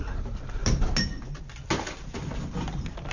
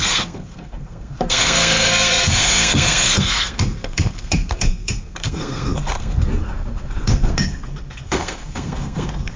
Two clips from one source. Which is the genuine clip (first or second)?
first